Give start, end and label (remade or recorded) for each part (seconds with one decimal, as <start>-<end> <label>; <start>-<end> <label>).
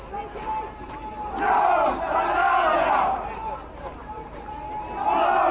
0.0-5.5 recorded